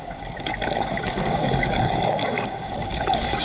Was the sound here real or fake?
fake